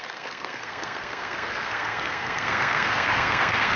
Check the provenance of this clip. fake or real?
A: fake